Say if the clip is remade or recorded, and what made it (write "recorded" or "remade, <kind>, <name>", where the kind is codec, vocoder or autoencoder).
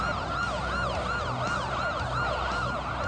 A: recorded